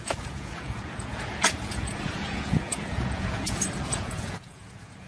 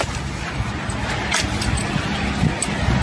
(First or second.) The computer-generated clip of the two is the first